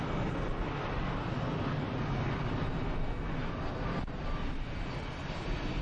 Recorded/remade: recorded